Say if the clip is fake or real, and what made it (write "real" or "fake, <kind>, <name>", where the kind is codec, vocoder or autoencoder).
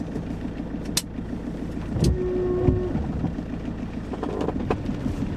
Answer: real